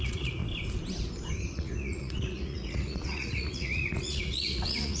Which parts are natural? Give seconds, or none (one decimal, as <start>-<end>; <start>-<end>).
0.4-1.5